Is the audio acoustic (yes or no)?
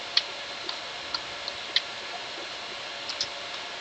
yes